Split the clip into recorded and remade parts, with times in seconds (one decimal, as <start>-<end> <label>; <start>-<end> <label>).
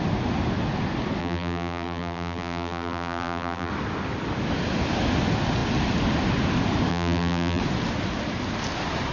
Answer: 0.0-1.2 recorded; 1.2-3.7 remade; 3.7-6.9 recorded; 6.9-7.6 remade; 7.6-9.1 recorded